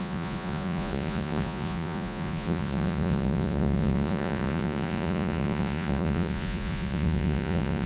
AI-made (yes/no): yes